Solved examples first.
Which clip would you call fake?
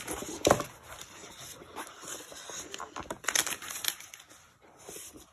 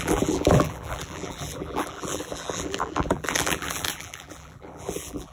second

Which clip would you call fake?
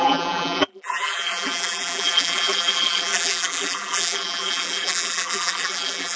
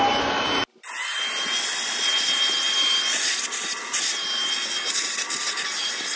first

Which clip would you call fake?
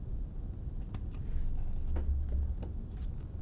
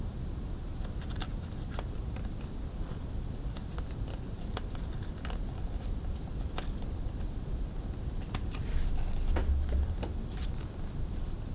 second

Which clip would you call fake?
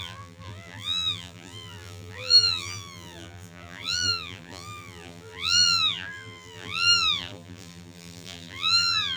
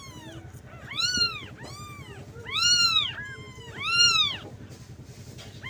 first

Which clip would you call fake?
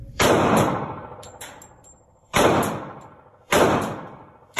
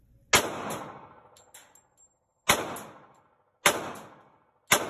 first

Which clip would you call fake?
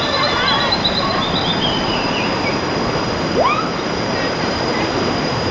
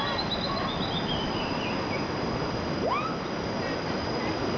first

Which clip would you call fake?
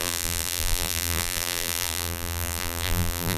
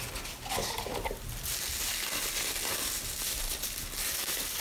first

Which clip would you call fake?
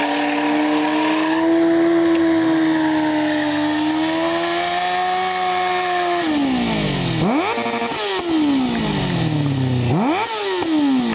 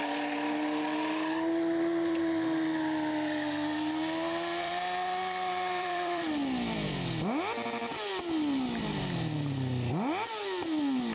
second